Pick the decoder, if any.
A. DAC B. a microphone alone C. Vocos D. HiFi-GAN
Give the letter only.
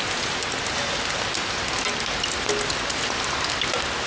B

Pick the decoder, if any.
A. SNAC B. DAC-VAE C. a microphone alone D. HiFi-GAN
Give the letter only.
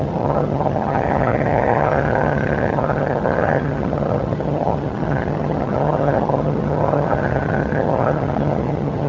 D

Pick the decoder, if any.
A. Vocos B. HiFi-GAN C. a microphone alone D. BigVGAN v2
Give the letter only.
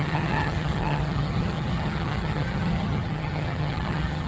B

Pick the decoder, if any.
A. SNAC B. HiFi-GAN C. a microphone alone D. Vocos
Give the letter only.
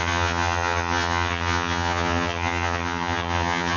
B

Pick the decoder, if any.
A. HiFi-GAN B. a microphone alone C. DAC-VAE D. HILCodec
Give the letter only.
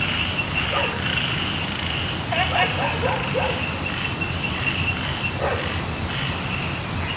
B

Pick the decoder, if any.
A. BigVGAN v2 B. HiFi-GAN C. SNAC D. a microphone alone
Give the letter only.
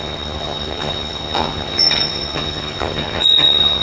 B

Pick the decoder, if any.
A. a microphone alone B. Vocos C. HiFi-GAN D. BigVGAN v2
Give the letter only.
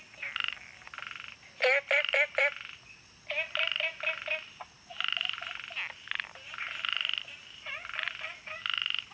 A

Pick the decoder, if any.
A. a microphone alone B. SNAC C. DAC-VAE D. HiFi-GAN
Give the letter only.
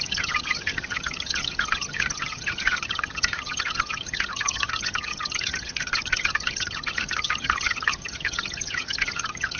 D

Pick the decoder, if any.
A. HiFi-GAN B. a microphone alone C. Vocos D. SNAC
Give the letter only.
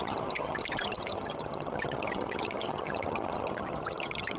A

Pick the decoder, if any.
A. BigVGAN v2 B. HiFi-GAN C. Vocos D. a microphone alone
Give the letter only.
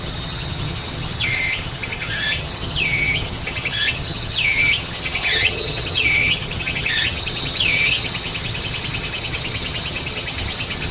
B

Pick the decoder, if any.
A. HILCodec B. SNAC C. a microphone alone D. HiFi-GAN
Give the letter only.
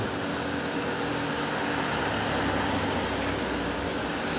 C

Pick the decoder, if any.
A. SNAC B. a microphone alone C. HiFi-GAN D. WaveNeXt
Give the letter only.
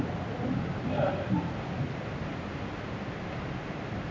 B